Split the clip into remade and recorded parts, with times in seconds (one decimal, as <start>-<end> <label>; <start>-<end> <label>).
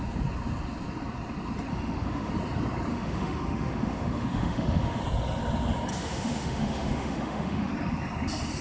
0.0-1.7 recorded; 1.7-2.3 remade; 2.3-2.9 recorded; 2.9-5.0 remade; 5.0-5.9 recorded; 5.9-7.7 remade; 7.7-8.6 recorded